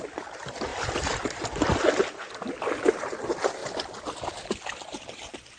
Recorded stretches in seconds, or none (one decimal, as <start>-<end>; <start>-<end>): 0.0-3.6; 4.3-5.6